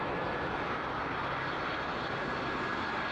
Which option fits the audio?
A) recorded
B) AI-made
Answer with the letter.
A